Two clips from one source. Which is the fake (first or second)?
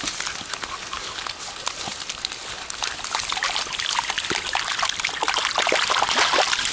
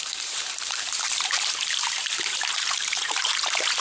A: second